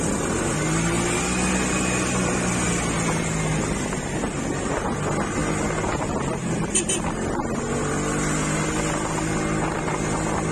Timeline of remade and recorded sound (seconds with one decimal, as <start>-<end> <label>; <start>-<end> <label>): 0.0-10.5 recorded